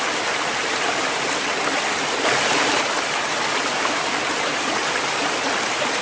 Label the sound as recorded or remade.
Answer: recorded